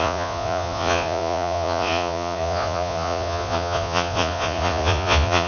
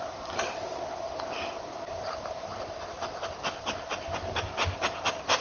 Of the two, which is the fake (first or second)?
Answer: first